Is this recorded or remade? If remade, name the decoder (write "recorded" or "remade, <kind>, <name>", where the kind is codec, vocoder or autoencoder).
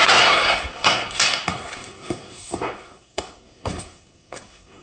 remade, codec, SNAC